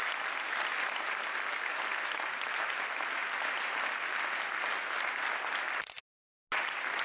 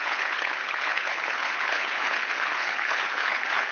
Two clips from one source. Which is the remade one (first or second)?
second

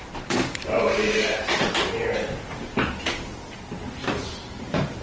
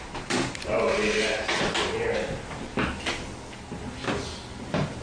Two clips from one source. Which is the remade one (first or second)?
first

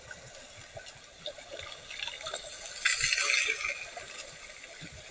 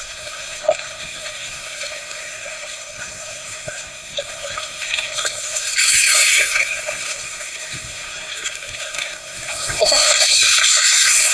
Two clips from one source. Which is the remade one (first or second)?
second